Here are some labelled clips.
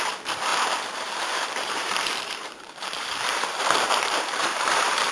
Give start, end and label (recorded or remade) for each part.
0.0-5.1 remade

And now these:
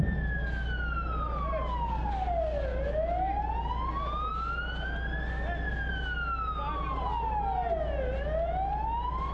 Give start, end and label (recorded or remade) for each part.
0.0-9.3 recorded

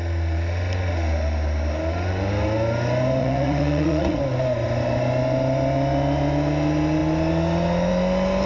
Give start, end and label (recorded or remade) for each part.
0.0-3.2 recorded; 3.2-4.2 remade; 4.2-8.5 recorded

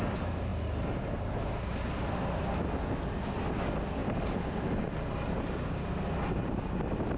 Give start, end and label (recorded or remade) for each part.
0.0-4.0 recorded; 4.0-6.5 remade; 6.5-7.2 recorded

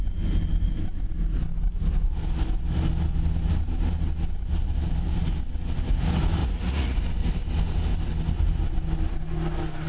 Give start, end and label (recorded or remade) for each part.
0.0-6.4 recorded; 6.4-7.0 remade; 7.0-9.9 recorded

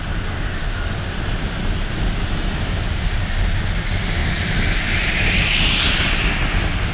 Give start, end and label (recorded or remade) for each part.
0.0-2.2 recorded; 2.2-2.8 remade; 2.8-6.9 recorded

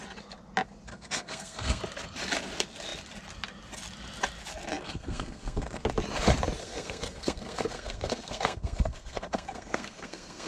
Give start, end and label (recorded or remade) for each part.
0.0-0.9 recorded; 0.9-1.8 remade; 1.8-4.7 recorded; 4.7-5.8 remade; 5.8-6.6 recorded; 6.6-10.5 remade